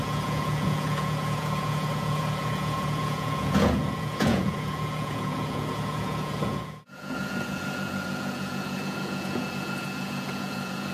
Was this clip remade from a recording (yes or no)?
yes